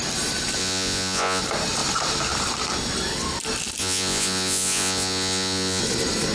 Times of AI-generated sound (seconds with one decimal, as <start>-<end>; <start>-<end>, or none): 0.6-1.4; 3.8-5.8